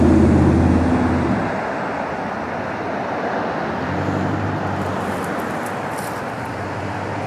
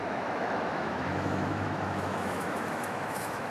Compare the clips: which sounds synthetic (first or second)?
second